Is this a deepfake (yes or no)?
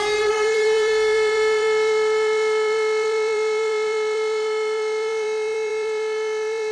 yes